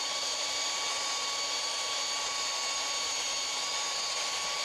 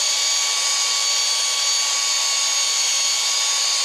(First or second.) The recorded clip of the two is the second